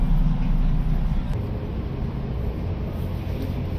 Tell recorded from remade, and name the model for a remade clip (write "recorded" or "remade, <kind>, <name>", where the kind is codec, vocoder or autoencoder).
recorded